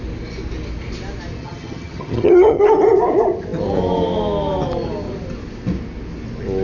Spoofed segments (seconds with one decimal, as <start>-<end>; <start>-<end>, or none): 1.4-2.6